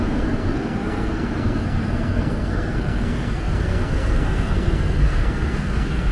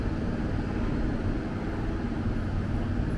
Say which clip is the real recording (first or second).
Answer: second